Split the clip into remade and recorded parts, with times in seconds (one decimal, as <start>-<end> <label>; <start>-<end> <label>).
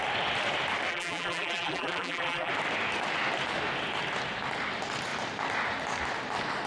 0.0-0.9 recorded; 0.9-2.5 remade; 2.5-6.7 recorded